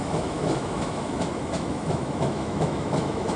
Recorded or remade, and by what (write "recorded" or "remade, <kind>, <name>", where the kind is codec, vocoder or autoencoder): remade, autoencoder, DAC-VAE